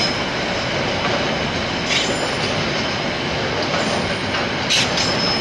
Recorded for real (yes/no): yes